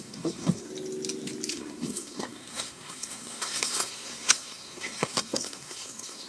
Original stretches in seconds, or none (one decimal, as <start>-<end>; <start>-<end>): 0.7-1.5